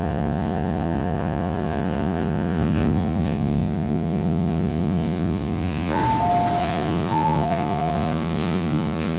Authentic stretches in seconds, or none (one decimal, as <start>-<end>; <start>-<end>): 6.0-6.6